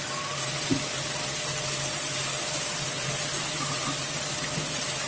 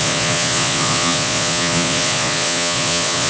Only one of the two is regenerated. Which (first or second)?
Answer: second